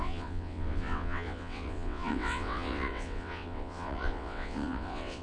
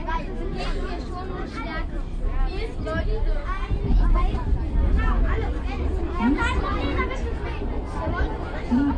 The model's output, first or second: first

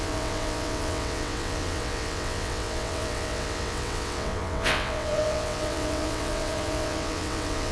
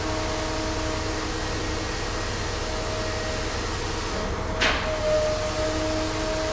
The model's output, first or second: first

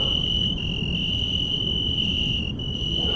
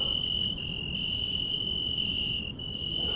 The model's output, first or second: second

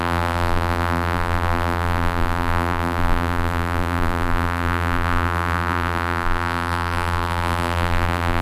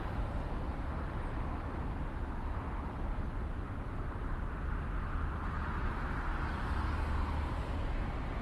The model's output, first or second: first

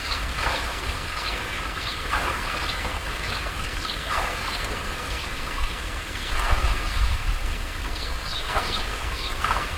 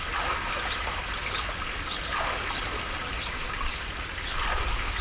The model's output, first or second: first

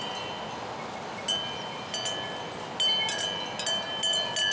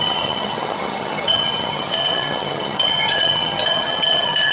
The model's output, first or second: second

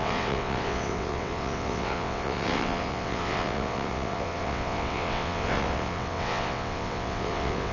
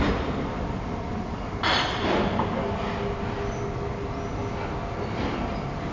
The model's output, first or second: first